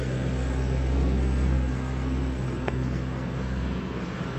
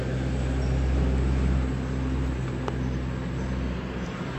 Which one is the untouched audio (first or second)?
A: second